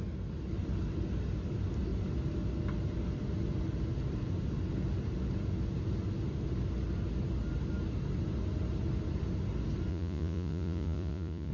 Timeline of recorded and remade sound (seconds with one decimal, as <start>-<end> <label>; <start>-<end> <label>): 0.0-9.9 recorded; 9.9-11.5 remade